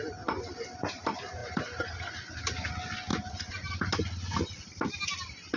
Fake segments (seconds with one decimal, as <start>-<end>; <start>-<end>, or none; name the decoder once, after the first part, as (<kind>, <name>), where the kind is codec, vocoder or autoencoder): none